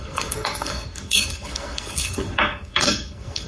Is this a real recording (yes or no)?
no